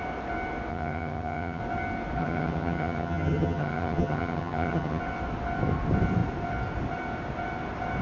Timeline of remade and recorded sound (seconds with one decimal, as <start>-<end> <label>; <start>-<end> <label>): 0.0-0.7 recorded; 0.7-1.6 remade; 1.6-2.2 recorded; 2.2-5.0 remade; 5.0-8.0 recorded